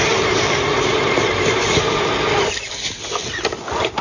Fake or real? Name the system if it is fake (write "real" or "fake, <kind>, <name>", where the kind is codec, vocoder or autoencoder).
real